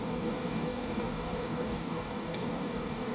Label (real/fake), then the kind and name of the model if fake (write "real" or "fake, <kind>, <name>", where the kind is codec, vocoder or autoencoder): fake, codec, DAC